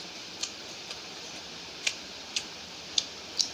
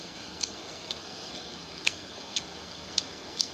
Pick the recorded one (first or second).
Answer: first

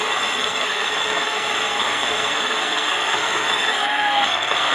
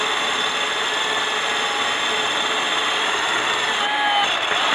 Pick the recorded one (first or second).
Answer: second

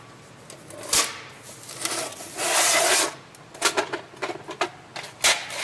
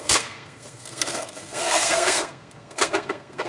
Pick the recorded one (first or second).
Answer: first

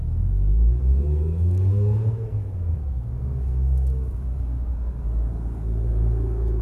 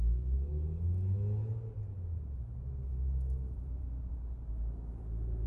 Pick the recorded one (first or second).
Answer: second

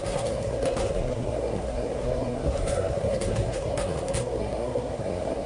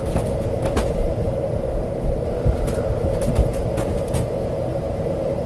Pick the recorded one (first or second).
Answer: second